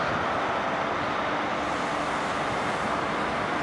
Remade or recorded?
recorded